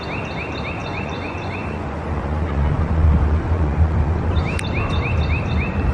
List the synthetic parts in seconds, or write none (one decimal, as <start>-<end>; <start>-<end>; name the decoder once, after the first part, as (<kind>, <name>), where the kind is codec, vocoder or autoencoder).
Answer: 0.8-4.3 (vocoder, Vocos)